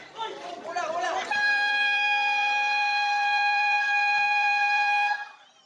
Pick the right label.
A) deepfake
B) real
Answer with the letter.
A